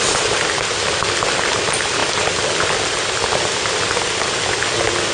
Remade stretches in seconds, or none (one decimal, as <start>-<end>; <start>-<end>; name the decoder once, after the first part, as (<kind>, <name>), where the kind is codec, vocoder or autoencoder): none